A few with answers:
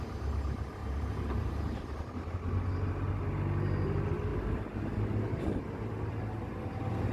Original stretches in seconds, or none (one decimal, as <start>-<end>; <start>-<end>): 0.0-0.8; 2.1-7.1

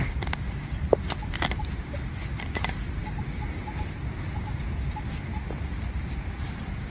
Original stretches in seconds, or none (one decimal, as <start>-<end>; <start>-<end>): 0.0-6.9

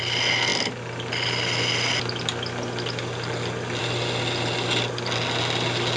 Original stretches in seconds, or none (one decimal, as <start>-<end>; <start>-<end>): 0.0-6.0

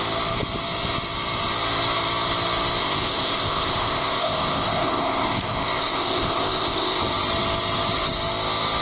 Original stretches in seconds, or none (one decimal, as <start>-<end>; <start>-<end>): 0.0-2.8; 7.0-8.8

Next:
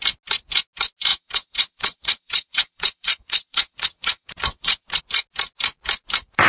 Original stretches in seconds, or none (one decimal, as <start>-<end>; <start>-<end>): 0.0-1.1; 5.0-6.5

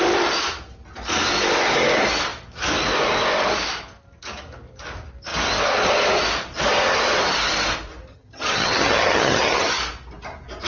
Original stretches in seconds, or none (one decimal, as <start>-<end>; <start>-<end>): 0.0-8.1; 9.8-10.7